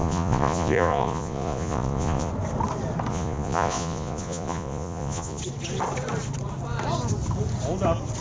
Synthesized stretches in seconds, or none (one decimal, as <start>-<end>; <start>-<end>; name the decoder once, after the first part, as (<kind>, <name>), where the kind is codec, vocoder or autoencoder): 0.0-2.3 (vocoder, Vocos); 3.1-5.4